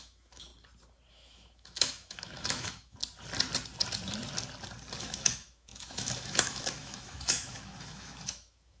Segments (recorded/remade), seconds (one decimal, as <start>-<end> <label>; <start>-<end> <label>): 0.0-0.5 remade; 0.5-1.1 recorded; 1.1-3.0 remade; 3.0-5.0 recorded; 5.0-8.8 remade